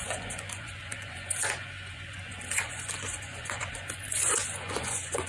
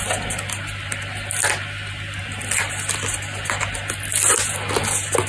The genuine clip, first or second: second